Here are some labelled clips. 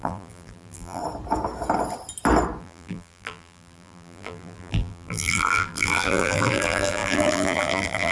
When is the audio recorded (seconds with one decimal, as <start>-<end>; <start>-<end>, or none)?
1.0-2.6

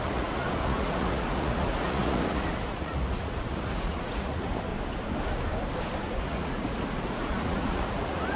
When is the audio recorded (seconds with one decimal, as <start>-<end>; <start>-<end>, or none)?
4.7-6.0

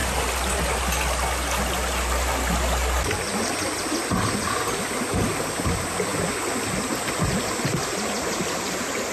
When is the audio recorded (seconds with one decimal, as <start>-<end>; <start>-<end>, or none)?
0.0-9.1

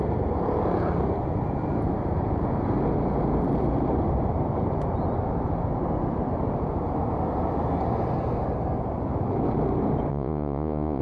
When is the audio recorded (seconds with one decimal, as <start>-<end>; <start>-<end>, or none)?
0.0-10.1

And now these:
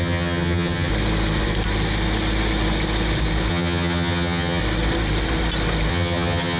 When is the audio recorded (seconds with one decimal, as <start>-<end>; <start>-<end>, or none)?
0.9-3.5; 4.6-5.9

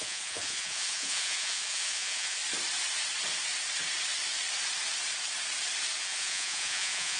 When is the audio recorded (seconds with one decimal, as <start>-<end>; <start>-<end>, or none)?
2.4-6.0